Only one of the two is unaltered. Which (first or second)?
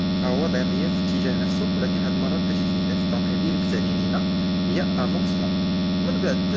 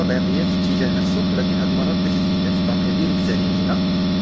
first